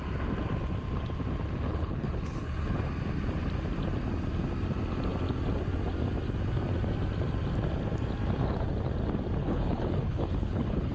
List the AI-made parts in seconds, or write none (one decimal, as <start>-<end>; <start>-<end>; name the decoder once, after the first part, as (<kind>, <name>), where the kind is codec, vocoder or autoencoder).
1.7-2.8 (codec, HILCodec); 9.4-10.9